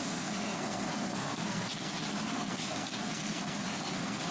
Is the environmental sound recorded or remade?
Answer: remade